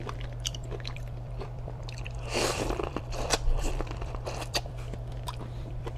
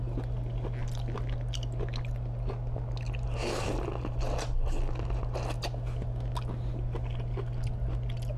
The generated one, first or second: first